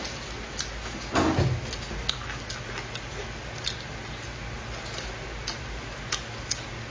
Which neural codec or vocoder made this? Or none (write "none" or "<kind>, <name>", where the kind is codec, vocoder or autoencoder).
none